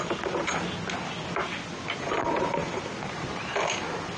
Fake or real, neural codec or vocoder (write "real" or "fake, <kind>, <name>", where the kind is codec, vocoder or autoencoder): real